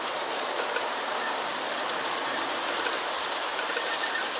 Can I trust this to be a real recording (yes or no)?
yes